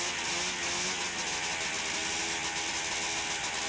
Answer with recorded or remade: recorded